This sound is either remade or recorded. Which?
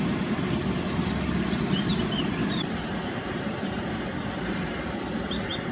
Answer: remade